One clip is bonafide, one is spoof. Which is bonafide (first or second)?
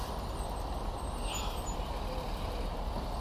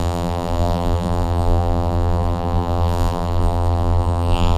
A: first